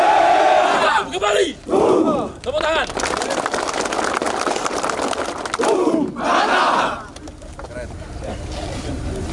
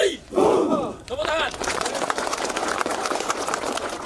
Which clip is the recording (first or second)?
first